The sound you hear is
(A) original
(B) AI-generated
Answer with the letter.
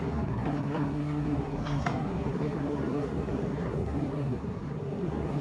B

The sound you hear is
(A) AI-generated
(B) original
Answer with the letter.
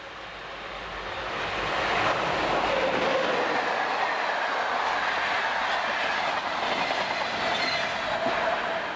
B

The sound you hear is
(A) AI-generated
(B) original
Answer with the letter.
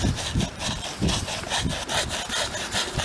B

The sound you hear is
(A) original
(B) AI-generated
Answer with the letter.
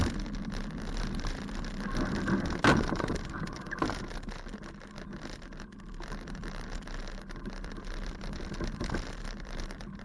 A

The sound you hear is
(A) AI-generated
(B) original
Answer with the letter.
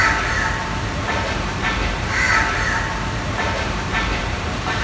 A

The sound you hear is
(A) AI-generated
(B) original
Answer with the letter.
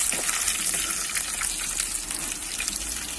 B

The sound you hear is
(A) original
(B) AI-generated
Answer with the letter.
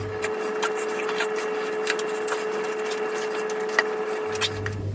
A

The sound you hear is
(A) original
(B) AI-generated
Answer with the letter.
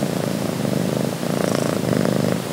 A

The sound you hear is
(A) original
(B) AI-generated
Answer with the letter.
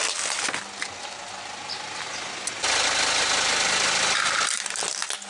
A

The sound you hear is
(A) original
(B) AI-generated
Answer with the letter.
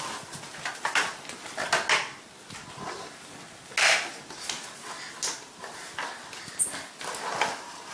A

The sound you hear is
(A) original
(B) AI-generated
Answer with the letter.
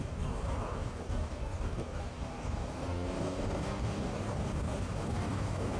B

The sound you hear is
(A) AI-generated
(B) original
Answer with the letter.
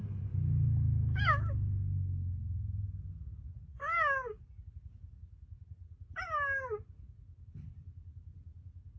B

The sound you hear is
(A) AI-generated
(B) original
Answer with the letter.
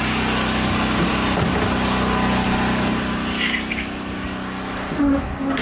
B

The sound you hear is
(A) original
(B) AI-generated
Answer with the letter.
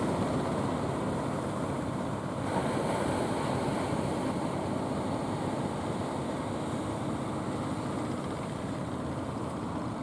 A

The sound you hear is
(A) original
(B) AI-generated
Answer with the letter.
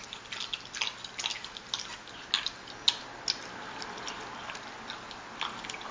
A